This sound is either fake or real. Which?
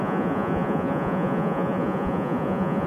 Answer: fake